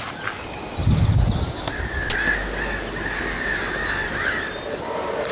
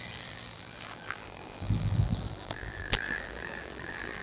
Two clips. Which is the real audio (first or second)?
first